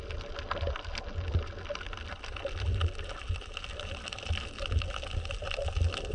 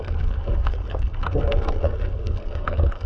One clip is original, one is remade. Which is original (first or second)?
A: first